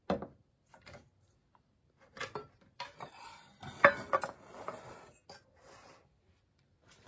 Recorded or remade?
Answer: recorded